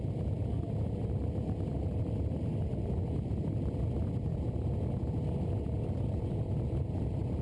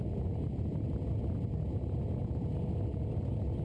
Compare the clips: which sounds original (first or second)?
second